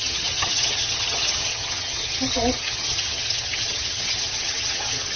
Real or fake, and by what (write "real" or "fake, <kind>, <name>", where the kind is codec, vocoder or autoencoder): fake, vocoder, HiFi-GAN